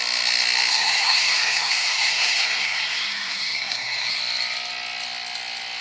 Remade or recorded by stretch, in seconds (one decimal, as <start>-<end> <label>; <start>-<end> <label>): 0.0-0.7 recorded; 0.7-4.2 remade; 4.2-5.8 recorded